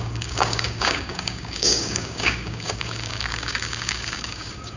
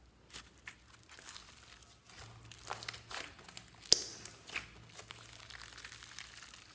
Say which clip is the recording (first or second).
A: second